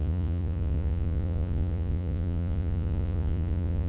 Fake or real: fake